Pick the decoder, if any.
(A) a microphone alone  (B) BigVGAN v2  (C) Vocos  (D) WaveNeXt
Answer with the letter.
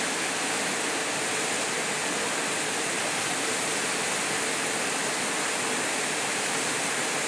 A